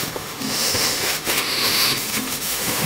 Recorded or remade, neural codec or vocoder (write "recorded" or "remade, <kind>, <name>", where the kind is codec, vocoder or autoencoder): remade, autoencoder, DAC-VAE